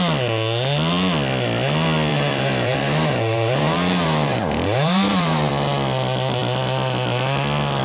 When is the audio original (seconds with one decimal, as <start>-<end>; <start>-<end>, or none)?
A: 0.0-2.1; 5.5-7.8